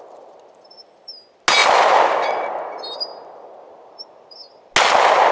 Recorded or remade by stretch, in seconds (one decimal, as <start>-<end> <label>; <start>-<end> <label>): 0.0-1.6 recorded; 1.6-3.7 remade; 3.7-5.3 recorded